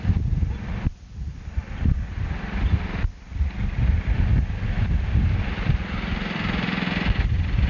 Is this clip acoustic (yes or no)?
no